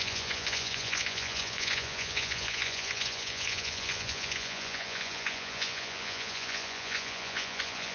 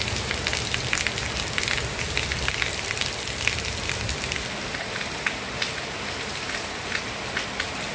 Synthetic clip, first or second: first